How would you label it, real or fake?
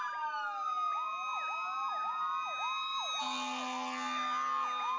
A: real